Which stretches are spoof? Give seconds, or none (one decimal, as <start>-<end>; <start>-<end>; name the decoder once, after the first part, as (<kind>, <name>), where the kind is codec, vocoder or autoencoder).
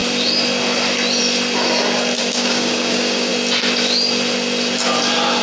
2.2-3.3 (codec, DAC)